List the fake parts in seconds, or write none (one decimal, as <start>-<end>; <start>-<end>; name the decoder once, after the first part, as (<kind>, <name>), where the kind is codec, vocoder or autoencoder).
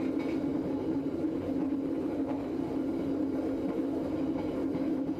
0.5-1.7 (vocoder, BigVGAN v2)